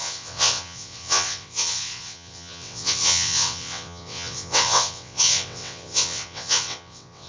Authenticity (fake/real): fake